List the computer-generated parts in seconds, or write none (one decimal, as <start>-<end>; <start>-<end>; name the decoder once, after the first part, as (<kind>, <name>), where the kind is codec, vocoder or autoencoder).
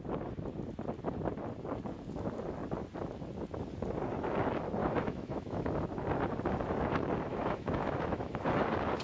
4.8-5.7 (autoencoder, DAC-VAE); 7.3-8.3